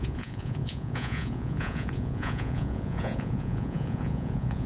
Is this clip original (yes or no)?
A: no